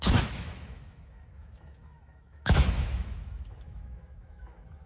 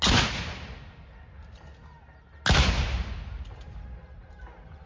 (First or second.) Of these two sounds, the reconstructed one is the first